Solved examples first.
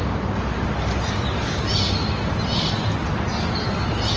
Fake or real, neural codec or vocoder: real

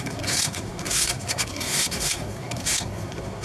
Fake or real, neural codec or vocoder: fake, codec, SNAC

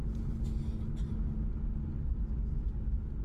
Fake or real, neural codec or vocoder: real